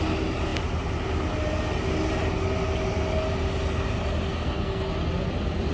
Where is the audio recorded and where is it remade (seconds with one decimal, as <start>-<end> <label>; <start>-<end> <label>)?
0.0-4.3 recorded; 4.3-4.8 remade; 4.8-5.7 recorded